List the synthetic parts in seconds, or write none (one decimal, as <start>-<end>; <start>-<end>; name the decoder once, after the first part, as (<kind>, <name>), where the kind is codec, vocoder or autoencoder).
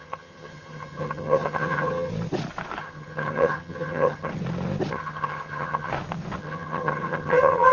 0.0-2.1 (vocoder, HiFi-GAN); 2.8-4.3; 4.9-5.9; 6.4-7.7